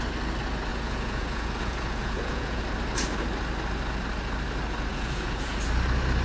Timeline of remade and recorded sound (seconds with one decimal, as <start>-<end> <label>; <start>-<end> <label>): 0.0-0.7 recorded; 0.7-2.6 remade; 2.6-4.9 recorded; 4.9-5.5 remade; 5.5-6.2 recorded